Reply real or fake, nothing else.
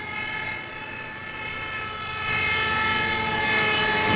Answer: real